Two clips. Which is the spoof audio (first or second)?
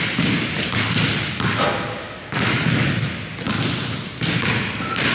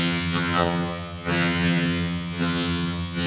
second